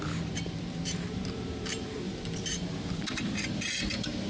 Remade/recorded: remade